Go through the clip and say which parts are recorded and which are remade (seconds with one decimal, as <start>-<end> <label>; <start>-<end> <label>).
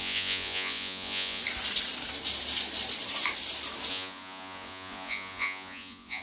0.0-1.4 remade; 1.4-3.9 recorded; 3.9-6.2 remade